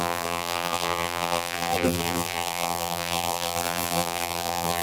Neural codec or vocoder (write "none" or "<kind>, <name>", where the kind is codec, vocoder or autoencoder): vocoder, BigVGAN v2